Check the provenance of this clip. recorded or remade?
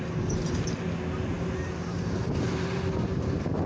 recorded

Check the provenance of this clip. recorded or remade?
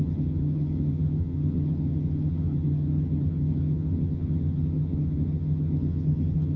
remade